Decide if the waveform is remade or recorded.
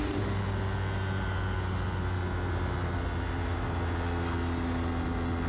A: recorded